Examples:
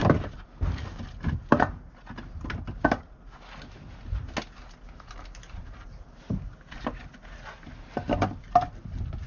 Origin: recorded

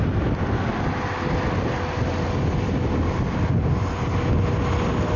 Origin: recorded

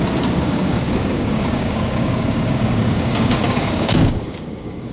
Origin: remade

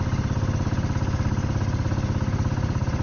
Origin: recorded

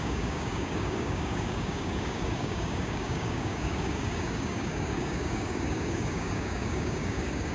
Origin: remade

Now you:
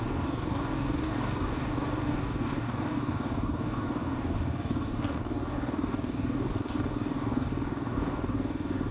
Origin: remade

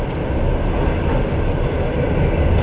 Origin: recorded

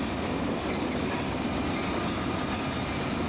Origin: recorded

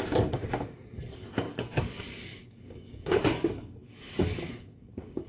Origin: remade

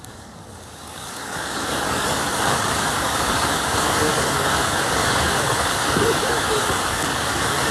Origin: remade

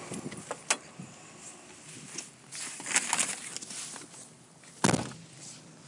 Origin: recorded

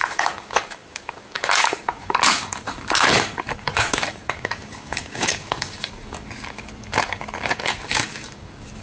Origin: remade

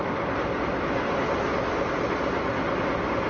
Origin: recorded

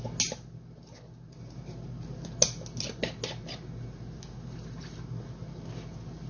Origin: recorded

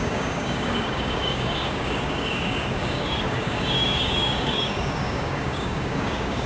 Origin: remade